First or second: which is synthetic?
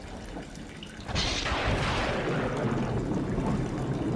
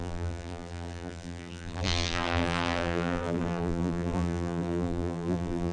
second